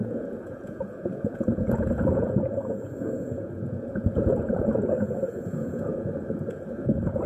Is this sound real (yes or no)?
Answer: no